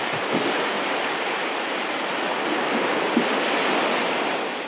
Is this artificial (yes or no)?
no